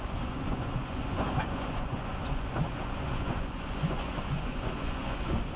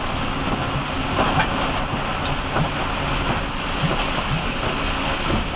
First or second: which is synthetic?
first